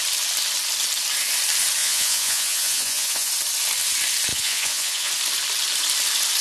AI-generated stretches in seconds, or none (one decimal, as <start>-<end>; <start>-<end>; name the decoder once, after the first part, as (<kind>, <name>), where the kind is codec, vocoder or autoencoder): 1.8-3.3 (vocoder, Vocos); 4.3-5.1